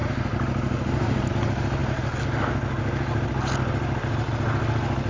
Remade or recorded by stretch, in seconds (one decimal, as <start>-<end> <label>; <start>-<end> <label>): 0.0-5.1 recorded